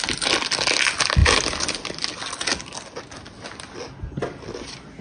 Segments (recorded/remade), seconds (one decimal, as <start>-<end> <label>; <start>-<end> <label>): 0.0-5.0 recorded